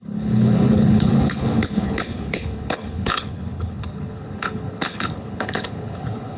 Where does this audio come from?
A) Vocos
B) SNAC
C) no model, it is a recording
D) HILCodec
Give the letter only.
D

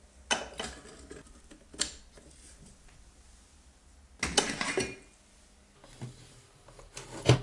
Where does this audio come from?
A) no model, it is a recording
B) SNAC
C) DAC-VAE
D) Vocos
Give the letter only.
A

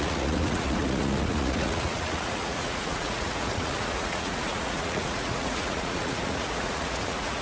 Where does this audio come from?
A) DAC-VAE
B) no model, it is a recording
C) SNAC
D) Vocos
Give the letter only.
D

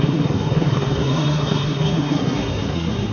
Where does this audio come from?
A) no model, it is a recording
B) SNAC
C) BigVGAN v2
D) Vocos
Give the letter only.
B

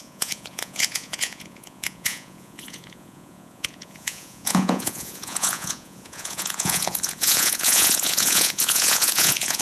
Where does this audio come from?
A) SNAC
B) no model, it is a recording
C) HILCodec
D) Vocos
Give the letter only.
D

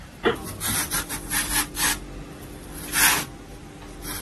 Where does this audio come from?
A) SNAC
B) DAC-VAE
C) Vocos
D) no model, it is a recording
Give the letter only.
D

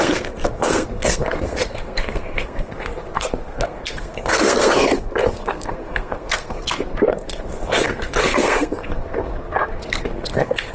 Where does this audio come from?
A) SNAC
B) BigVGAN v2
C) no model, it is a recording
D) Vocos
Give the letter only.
A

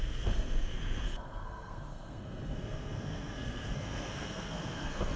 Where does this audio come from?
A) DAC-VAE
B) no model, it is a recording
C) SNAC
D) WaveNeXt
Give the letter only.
C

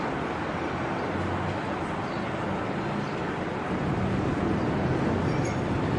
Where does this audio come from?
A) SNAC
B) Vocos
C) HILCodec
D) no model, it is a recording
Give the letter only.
D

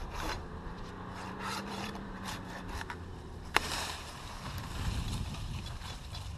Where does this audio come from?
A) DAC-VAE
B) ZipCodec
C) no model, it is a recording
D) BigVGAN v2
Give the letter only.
D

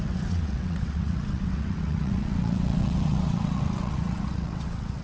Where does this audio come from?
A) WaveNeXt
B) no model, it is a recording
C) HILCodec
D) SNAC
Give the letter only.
A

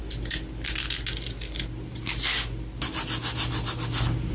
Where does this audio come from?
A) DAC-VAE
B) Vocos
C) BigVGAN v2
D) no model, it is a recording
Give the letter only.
D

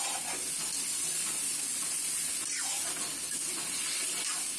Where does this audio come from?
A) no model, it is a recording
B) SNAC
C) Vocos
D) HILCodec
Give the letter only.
A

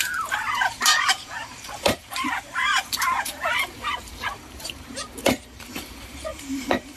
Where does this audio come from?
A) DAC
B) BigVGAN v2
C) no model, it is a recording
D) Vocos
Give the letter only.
B